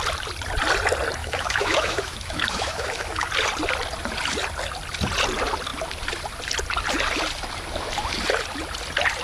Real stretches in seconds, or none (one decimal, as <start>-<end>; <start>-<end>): 0.0-1.2; 3.3-9.2